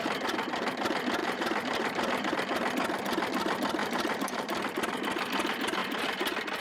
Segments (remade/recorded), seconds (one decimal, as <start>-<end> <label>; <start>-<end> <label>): 0.0-1.2 recorded; 1.2-2.3 remade; 2.3-3.8 recorded; 3.8-4.6 remade; 4.6-6.6 recorded